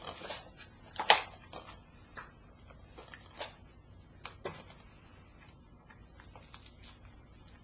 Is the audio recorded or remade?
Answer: recorded